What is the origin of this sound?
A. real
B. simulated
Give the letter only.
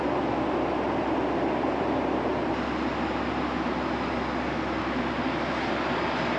A